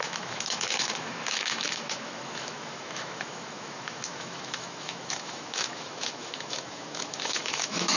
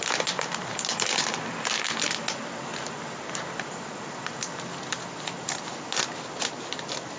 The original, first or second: second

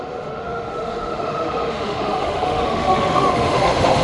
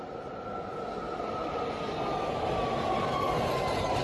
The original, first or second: second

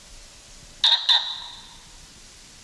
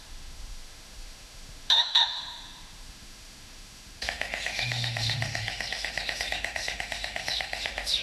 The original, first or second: first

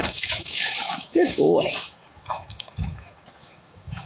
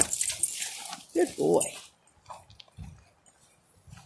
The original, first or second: second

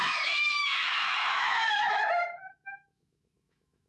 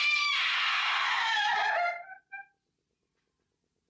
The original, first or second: second